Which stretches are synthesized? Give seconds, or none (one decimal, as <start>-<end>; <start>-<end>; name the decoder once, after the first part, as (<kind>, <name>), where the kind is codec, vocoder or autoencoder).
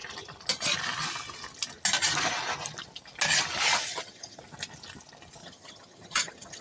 3.9-4.4 (vocoder, HiFi-GAN); 5.4-6.6